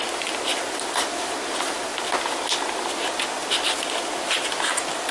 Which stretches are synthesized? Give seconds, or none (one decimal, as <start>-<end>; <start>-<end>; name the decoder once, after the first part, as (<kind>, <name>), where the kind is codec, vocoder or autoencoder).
0.5-1.2 (vocoder, BigVGAN v2); 1.9-5.1